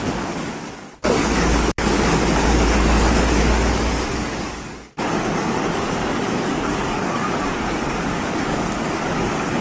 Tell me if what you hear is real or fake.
fake